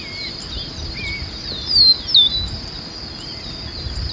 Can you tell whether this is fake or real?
real